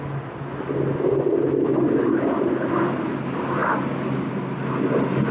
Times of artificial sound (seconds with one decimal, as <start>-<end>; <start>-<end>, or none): none